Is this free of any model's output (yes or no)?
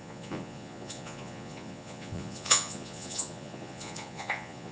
no